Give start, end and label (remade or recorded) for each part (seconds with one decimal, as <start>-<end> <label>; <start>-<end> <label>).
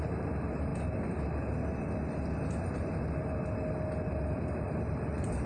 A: 0.0-0.7 remade; 0.7-4.0 recorded; 4.0-5.5 remade